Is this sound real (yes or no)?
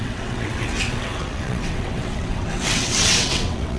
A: no